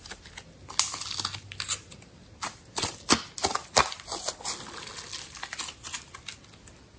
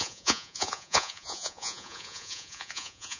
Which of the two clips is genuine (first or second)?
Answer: first